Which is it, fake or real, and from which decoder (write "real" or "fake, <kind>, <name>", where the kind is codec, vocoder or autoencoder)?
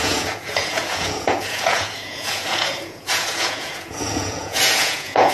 fake, vocoder, Vocos